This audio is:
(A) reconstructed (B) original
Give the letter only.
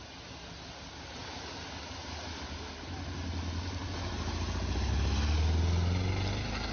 B